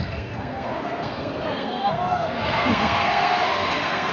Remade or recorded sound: remade